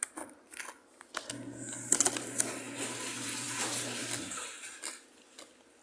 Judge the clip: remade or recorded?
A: recorded